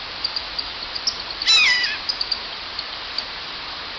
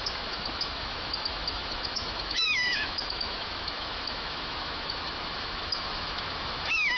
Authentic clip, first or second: first